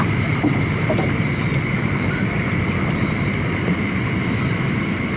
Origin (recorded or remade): remade